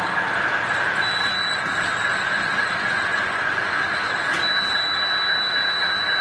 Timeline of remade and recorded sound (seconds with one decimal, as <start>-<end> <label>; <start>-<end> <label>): 0.0-3.1 recorded; 3.1-3.8 remade; 3.8-6.2 recorded